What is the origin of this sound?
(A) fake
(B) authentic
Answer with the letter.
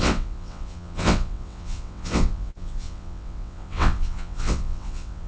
A